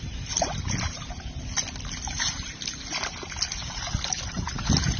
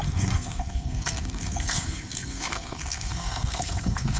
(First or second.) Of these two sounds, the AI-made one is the second